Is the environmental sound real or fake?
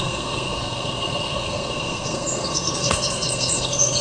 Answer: fake